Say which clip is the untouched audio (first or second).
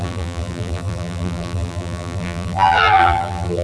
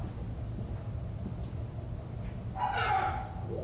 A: second